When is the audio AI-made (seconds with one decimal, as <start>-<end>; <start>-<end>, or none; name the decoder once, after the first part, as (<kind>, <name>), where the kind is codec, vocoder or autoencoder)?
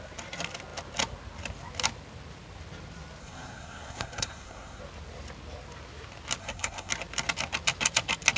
3.2-4.8 (codec, SNAC); 6.4-6.9